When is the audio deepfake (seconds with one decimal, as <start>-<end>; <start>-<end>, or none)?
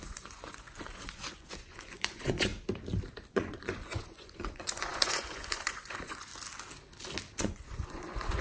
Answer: 0.0-2.5; 3.3-6.3; 7.4-8.4